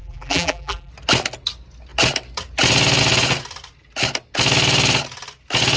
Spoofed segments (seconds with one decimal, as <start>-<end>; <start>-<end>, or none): 0.0-0.9